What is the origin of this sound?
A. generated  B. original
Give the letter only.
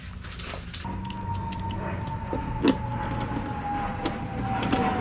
B